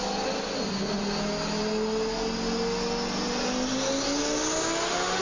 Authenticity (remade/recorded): recorded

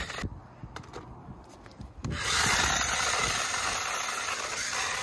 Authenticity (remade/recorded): recorded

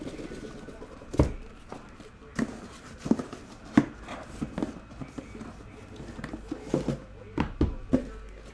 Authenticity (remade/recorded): recorded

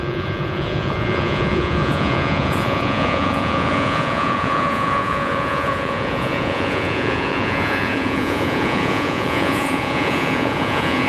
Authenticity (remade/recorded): remade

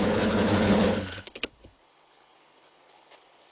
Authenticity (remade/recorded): remade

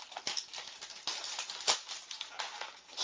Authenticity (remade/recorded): recorded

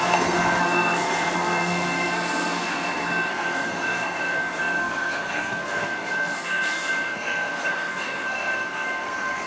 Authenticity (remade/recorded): remade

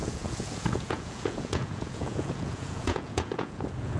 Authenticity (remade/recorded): remade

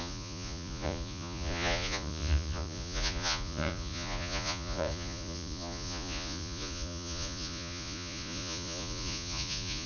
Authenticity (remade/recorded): remade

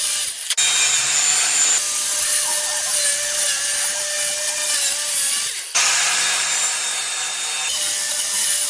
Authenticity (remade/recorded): recorded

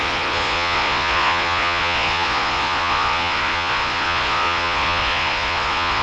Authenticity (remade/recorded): remade